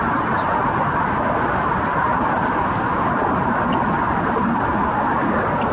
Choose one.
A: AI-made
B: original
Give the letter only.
B